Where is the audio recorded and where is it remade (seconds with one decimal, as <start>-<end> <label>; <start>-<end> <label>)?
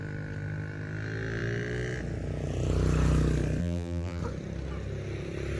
0.0-3.6 recorded; 3.6-4.2 remade; 4.2-5.6 recorded